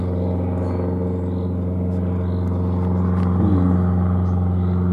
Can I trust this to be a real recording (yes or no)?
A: yes